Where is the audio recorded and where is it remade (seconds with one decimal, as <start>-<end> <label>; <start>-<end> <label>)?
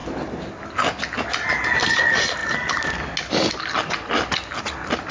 0.0-5.1 recorded